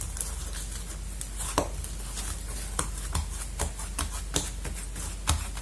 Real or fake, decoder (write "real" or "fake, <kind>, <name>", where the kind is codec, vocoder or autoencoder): real